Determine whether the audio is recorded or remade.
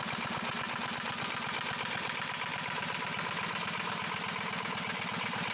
recorded